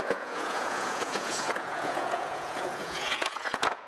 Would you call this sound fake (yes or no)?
yes